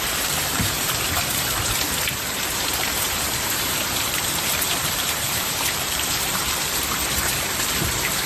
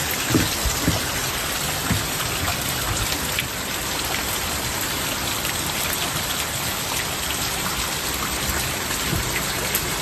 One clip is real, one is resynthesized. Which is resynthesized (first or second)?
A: first